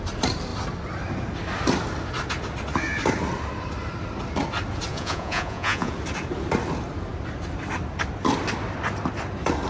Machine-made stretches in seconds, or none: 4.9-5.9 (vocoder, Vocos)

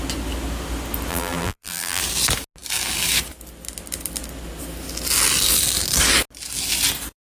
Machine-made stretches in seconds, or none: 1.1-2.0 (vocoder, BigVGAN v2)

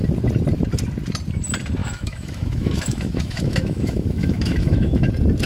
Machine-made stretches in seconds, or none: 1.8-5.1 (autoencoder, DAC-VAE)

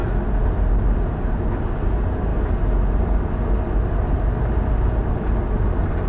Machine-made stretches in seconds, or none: none